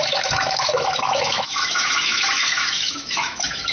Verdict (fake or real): fake